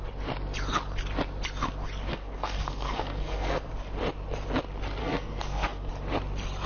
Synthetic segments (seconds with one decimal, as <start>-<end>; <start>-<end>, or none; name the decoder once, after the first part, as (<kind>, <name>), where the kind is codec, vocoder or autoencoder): 2.1-3.7 (codec, SNAC); 5.0-5.9